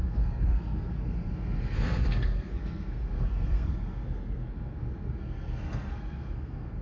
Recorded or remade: remade